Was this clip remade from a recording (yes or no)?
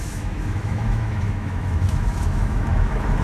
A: yes